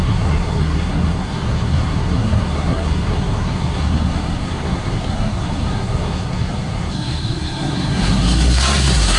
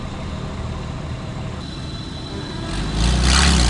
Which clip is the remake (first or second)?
first